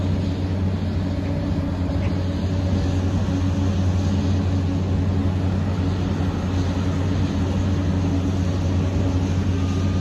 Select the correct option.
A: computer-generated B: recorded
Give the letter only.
B